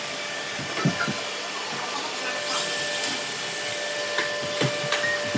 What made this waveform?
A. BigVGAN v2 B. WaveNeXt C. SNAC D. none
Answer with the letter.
D